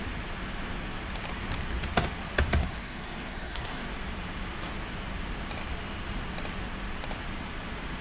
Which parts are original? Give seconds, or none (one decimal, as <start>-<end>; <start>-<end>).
0.0-2.6; 3.9-8.0